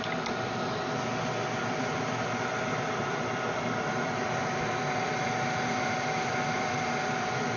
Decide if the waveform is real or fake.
fake